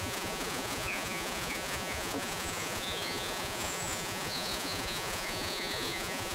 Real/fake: fake